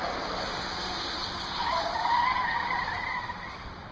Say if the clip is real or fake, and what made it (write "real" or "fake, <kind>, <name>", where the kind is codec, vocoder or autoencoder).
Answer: real